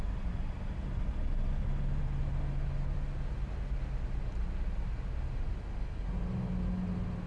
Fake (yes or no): no